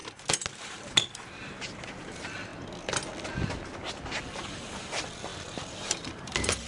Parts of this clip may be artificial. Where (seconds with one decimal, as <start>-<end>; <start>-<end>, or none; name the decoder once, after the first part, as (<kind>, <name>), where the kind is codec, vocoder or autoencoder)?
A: 0.5-2.5 (vocoder, BigVGAN v2); 4.4-6.7